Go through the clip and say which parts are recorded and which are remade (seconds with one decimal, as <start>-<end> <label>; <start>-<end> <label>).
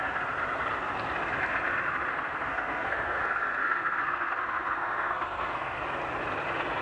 0.0-2.1 recorded; 2.1-5.8 remade; 5.8-6.8 recorded